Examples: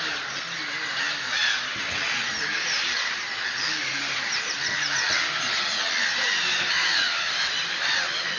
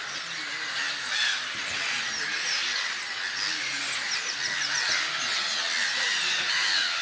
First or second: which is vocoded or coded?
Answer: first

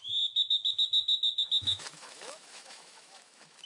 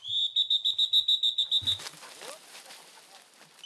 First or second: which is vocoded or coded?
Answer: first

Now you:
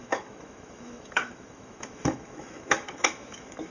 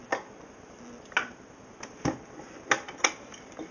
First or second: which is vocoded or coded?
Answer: first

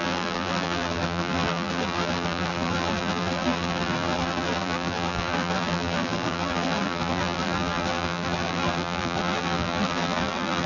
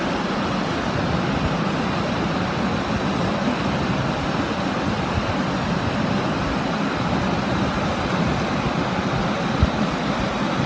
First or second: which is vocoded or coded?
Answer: first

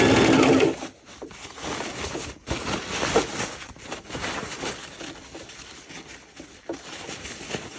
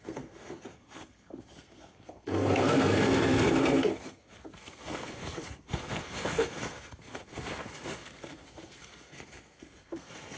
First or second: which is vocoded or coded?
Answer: second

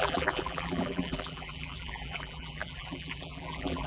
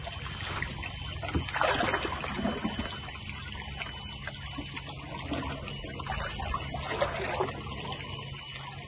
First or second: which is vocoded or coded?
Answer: first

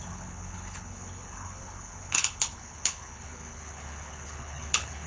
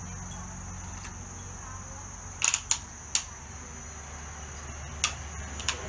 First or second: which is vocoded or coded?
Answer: first